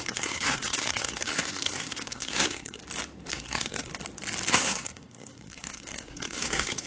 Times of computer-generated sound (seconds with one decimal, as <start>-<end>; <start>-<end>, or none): 0.0-2.8; 3.3-3.9; 4.5-6.9

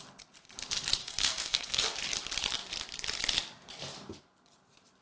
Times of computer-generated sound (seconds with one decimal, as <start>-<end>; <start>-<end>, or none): 1.0-1.8

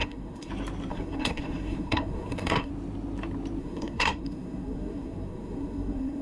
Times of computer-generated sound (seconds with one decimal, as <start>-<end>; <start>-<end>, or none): 0.0-0.5; 0.9-2.7; 3.6-6.2

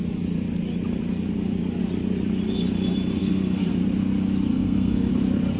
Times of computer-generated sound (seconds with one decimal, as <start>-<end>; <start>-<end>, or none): 3.2-3.7; 4.5-5.1